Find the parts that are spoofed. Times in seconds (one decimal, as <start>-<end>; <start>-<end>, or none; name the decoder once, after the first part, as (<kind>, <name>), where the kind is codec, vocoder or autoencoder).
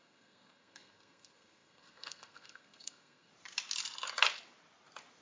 0.0-3.3 (codec, SNAC)